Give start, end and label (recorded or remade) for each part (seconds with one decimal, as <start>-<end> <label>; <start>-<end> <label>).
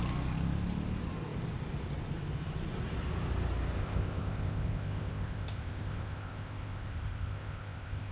0.0-3.8 recorded; 3.8-8.1 remade